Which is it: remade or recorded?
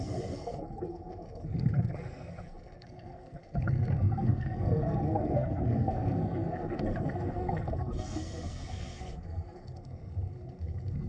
remade